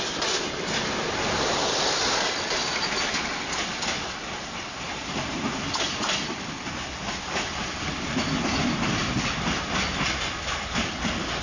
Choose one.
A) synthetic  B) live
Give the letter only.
B